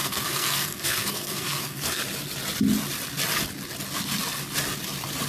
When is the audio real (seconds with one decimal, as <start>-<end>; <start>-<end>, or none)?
2.0-5.3